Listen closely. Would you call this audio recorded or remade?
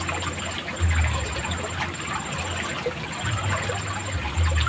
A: recorded